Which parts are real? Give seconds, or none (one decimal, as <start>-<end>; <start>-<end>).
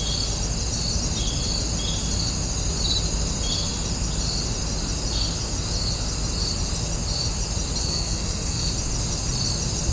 0.0-7.8; 8.7-9.9